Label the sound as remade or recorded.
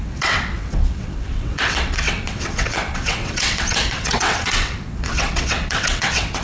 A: remade